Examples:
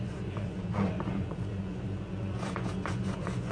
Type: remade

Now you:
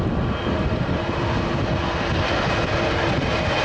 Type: recorded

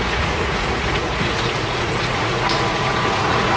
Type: remade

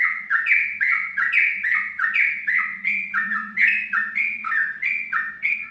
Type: remade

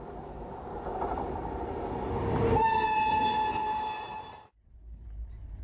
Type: recorded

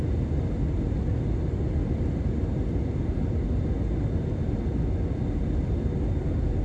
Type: recorded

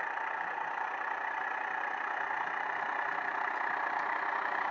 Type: recorded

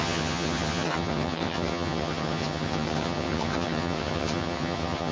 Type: remade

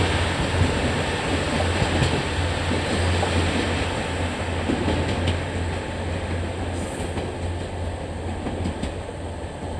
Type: recorded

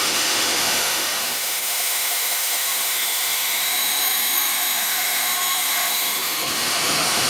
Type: remade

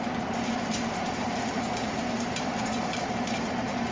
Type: remade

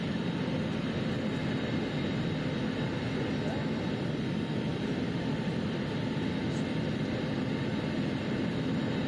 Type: recorded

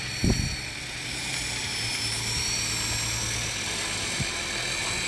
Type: recorded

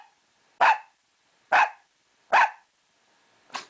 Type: recorded